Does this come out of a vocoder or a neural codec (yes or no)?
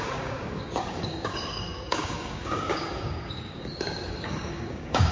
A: yes